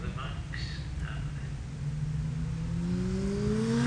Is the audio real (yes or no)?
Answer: yes